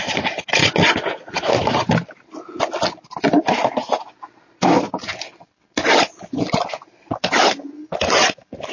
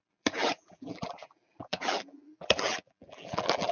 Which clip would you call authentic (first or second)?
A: first